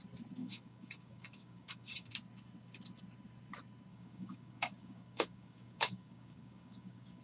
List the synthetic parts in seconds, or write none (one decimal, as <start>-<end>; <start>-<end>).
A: 0.4-2.1; 3.9-7.2